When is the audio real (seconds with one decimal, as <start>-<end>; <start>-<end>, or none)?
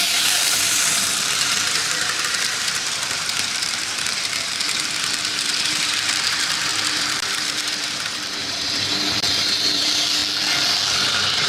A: 10.2-11.1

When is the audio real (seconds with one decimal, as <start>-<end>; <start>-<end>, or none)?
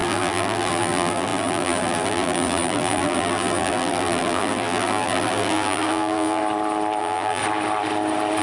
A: 6.4-7.0; 7.4-8.4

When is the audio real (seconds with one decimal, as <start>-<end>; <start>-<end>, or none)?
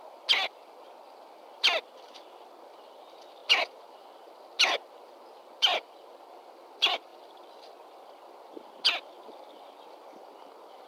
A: 0.0-10.9